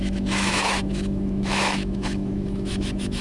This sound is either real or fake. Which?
fake